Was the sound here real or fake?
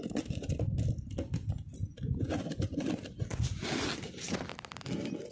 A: real